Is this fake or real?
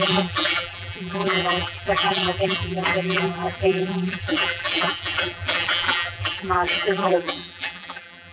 fake